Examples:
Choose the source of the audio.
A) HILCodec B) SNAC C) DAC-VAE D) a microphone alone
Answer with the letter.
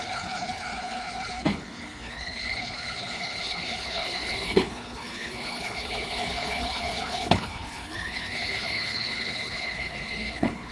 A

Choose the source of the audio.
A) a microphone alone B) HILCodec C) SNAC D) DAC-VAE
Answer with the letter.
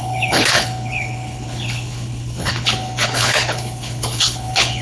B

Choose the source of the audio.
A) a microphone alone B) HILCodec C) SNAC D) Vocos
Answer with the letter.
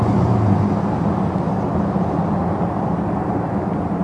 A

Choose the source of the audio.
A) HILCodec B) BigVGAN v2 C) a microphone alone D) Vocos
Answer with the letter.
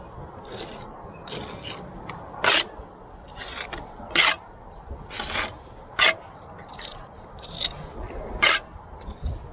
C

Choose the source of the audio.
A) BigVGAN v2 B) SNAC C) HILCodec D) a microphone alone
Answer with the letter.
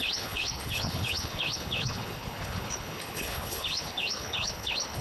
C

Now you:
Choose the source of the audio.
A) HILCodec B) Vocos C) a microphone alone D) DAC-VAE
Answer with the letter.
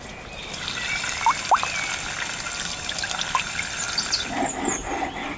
C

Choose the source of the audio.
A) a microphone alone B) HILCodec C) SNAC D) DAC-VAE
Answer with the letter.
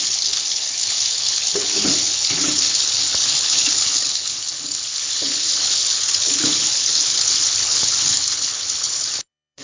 B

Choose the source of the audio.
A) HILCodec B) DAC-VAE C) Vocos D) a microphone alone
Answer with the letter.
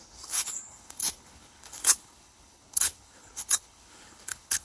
A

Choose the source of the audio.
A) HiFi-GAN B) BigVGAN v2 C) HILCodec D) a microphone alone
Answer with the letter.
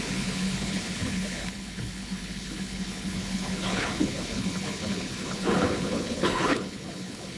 C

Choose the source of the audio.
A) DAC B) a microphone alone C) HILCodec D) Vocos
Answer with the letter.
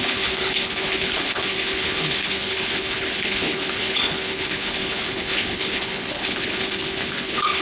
C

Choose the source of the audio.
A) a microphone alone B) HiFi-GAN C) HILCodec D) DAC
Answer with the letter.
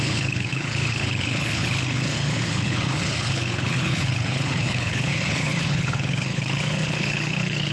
C